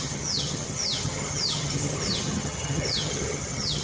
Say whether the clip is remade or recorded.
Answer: remade